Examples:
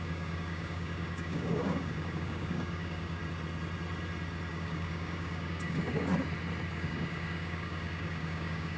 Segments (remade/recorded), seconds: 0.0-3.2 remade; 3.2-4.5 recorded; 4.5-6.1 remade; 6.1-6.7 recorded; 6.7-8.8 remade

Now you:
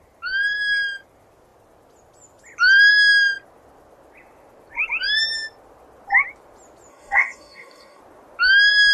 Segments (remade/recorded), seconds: 0.0-6.9 recorded; 6.9-8.0 remade; 8.0-8.9 recorded

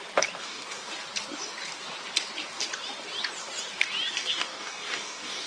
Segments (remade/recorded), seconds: 0.0-0.4 recorded; 0.4-0.9 remade; 0.9-4.2 recorded; 4.2-5.5 remade

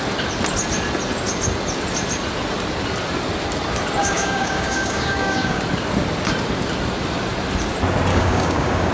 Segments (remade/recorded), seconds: 0.0-4.0 recorded; 4.0-5.6 remade; 5.6-8.1 recorded; 8.1-8.9 remade

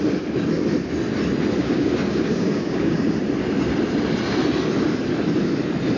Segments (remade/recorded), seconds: 0.0-1.6 recorded; 1.6-3.1 remade; 3.1-6.0 recorded

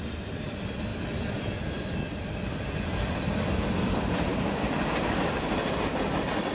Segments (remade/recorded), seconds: 0.0-4.3 recorded; 4.3-5.5 remade; 5.5-6.5 recorded

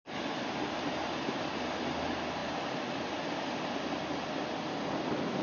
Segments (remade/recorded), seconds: 0.0-5.4 recorded

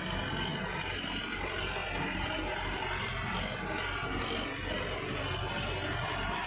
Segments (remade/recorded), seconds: 0.0-6.5 recorded